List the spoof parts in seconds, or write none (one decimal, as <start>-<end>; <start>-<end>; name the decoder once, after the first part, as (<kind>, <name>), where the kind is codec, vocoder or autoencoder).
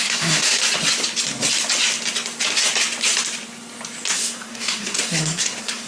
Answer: 0.0-0.6 (codec, SNAC); 4.1-5.9